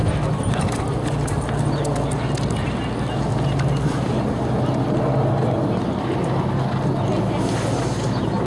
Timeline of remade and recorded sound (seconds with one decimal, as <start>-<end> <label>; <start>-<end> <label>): 0.0-8.5 recorded